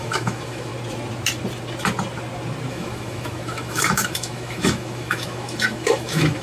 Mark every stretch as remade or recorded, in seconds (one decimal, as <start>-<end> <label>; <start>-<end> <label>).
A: 0.0-0.7 remade; 0.7-2.7 recorded; 2.7-6.4 remade